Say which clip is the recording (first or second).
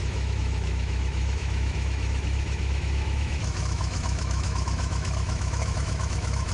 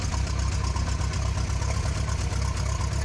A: second